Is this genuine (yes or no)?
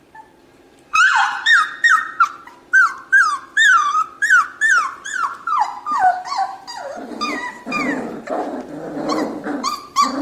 no